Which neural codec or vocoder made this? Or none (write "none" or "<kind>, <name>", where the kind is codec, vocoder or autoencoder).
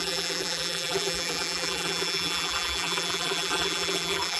vocoder, BigVGAN v2